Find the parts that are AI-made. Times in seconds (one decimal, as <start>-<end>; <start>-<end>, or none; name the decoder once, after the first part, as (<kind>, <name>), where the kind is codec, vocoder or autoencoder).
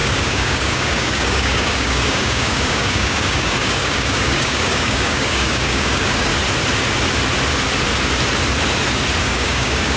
0.0-6.3 (codec, DAC); 9.2-10.0